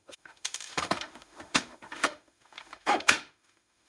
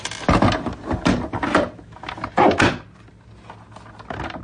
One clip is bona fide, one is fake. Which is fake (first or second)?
first